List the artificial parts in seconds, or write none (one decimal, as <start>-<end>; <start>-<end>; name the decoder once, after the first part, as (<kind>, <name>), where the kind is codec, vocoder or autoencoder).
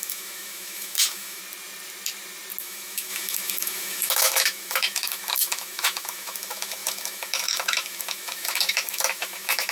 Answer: 0.0-1.4 (autoencoder, DAC-VAE); 2.6-9.7